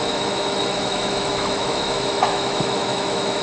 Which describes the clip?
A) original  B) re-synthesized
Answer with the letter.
B